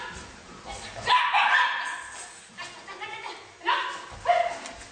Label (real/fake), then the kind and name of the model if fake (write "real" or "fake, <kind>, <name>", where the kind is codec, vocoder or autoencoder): real